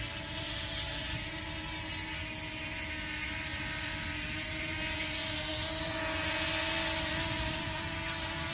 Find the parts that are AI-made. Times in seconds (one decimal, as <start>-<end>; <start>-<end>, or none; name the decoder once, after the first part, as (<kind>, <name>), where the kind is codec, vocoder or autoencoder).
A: none